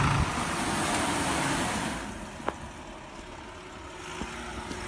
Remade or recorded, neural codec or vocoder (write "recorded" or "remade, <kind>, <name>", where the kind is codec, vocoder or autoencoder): recorded